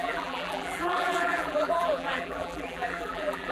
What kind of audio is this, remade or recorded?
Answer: remade